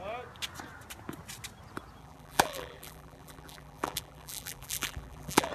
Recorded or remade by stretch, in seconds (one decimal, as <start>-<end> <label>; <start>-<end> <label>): 0.0-2.0 recorded; 2.0-5.5 remade